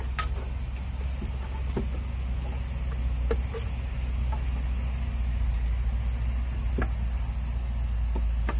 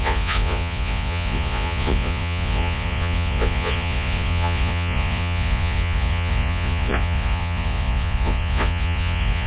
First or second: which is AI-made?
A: second